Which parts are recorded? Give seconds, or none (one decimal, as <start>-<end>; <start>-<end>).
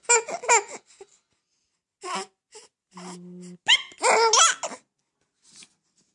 0.0-6.1